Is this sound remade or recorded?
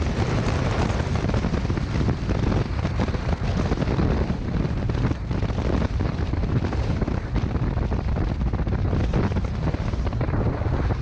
remade